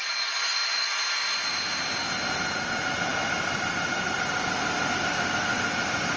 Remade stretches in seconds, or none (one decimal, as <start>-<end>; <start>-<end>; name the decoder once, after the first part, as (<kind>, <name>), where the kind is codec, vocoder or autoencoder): none